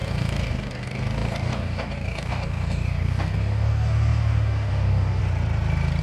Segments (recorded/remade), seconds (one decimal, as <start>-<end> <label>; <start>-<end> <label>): 0.0-5.2 remade; 5.2-6.0 recorded